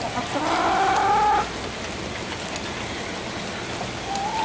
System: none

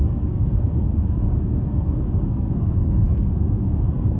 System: codec, SNAC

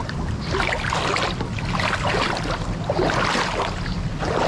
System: none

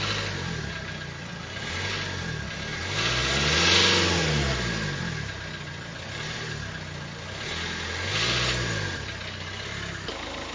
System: none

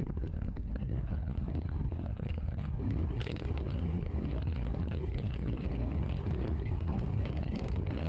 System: codec, SNAC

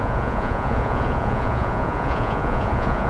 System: vocoder, Vocos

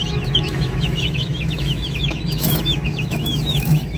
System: autoencoder, DAC-VAE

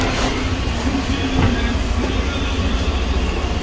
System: none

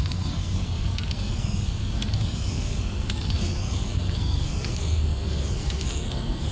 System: codec, SNAC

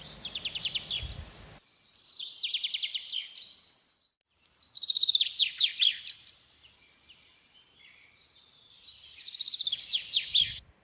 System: vocoder, BigVGAN v2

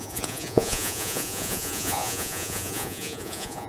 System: vocoder, Vocos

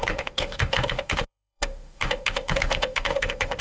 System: autoencoder, DAC-VAE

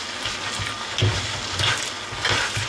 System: none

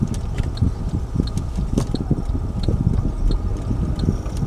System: none